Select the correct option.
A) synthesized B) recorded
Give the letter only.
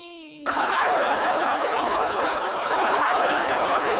A